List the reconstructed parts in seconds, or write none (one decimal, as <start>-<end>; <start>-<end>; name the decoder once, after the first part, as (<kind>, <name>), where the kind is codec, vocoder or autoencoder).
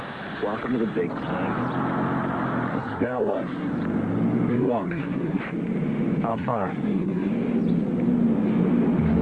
2.7-3.7 (codec, SNAC); 4.5-5.4; 6.3-7.3